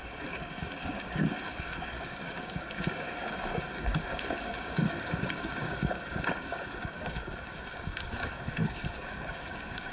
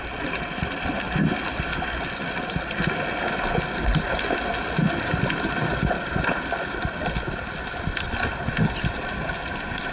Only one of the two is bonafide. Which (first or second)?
second